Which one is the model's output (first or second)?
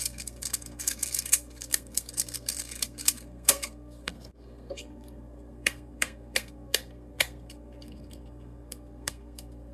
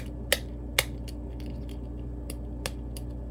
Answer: first